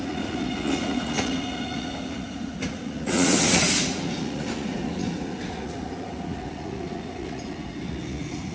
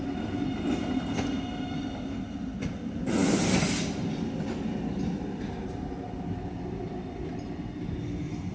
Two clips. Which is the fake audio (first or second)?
first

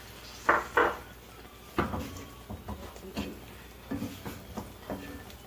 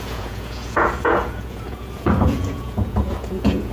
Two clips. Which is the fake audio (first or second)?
second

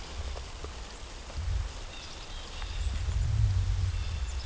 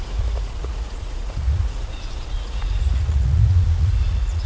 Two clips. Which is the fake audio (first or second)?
second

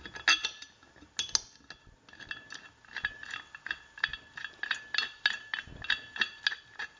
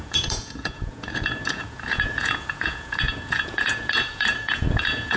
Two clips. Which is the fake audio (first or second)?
second